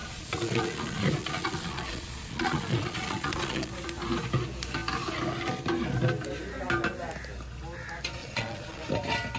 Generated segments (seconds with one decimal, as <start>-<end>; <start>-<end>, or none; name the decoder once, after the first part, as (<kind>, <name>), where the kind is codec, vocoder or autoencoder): 0.0-3.7 (vocoder, Vocos); 8.2-8.8